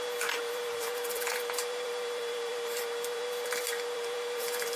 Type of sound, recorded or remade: remade